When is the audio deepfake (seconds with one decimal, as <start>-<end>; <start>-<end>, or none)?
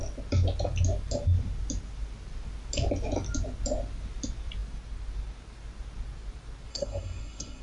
6.7-7.6